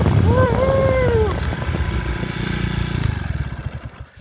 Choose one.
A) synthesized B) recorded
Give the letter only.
B